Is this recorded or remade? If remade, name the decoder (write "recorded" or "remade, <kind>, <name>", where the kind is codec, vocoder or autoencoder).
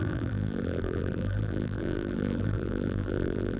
remade, vocoder, BigVGAN v2